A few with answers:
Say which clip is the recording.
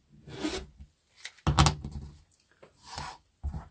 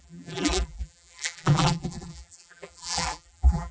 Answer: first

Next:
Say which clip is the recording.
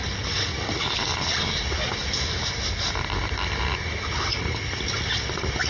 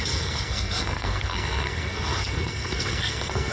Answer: first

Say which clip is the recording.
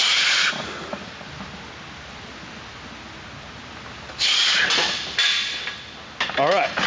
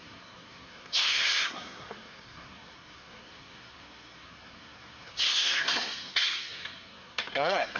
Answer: first